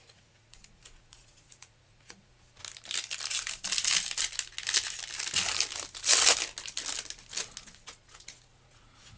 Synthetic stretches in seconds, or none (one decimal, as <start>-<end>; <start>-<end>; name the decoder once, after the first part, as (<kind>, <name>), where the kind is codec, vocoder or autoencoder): 0.0-2.3 (vocoder, Vocos); 7.6-9.2